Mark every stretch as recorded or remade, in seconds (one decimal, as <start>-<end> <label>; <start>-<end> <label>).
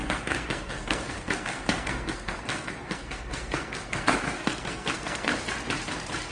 0.0-5.3 remade; 5.3-6.3 recorded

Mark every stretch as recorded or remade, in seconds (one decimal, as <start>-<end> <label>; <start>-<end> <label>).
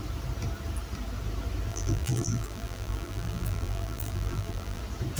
0.0-1.7 recorded; 1.7-4.8 remade; 4.8-5.2 recorded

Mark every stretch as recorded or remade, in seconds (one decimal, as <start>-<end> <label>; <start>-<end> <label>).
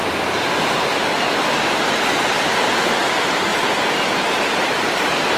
0.0-0.9 remade; 0.9-3.5 recorded; 3.5-5.4 remade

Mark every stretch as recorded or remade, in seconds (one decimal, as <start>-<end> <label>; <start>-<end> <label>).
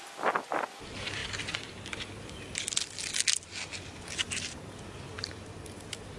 0.0-6.2 recorded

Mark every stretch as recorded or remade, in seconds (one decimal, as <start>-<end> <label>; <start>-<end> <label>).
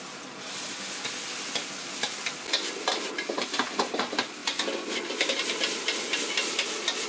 0.0-7.1 recorded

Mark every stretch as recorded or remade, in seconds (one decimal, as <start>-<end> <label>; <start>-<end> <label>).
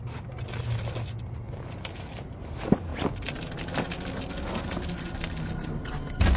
0.0-6.4 recorded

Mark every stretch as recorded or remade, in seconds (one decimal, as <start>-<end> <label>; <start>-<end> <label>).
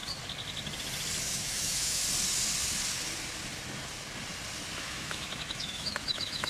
0.0-1.2 recorded; 1.2-2.0 remade; 2.0-4.8 recorded; 4.8-6.5 remade